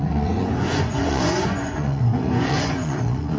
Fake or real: fake